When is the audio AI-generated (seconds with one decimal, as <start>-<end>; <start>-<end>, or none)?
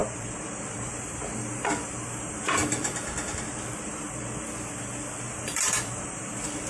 0.0-2.6; 5.3-6.7